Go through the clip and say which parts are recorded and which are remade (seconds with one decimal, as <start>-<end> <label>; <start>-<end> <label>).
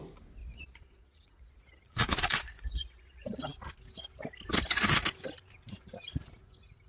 0.0-0.4 recorded; 0.4-3.5 remade; 3.5-6.9 recorded